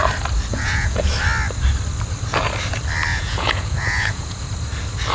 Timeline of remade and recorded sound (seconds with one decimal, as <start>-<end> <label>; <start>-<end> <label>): 0.0-0.5 recorded; 0.5-1.1 remade; 1.1-3.1 recorded; 3.1-4.5 remade; 4.5-5.1 recorded